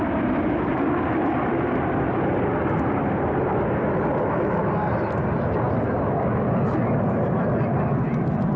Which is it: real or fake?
real